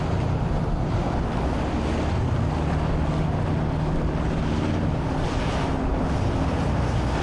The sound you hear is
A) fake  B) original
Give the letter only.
B